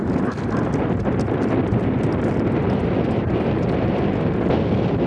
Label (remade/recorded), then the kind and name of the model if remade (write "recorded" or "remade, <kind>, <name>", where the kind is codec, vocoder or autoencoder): recorded